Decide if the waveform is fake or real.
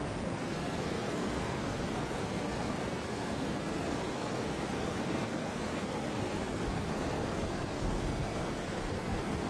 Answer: fake